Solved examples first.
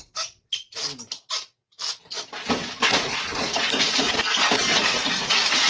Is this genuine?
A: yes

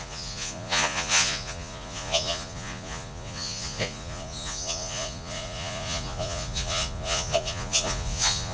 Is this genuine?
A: no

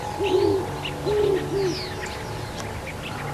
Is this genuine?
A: yes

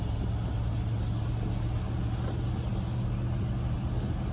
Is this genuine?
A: yes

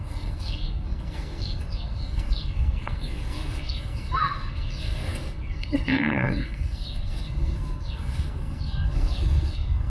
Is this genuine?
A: no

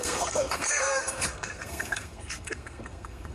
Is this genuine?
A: no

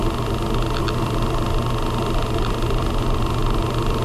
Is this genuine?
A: yes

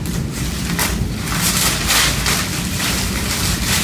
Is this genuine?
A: no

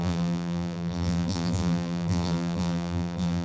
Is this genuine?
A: no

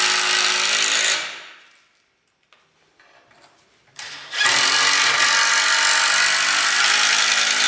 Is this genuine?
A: yes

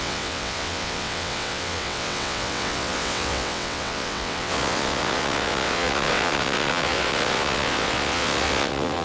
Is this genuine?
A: no